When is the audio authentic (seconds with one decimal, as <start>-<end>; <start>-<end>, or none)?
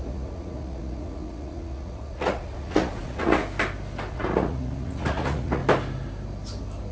3.4-4.1; 5.6-6.9